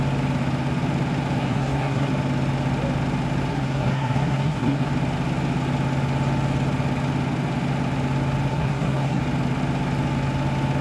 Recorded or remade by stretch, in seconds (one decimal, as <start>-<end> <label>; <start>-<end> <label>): 0.0-1.4 recorded; 1.4-2.1 remade; 2.1-3.5 recorded; 3.5-4.9 remade; 4.9-8.5 recorded; 8.5-9.2 remade; 9.2-10.8 recorded